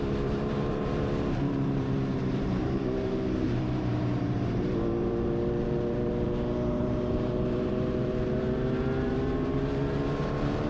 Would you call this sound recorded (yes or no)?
no